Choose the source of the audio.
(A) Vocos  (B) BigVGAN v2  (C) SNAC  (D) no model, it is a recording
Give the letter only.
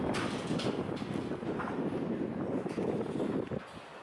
D